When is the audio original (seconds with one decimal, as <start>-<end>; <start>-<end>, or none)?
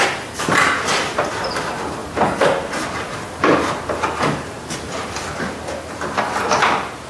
0.0-7.1